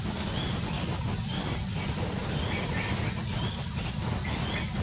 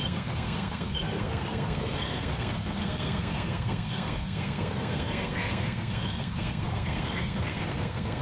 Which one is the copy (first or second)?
second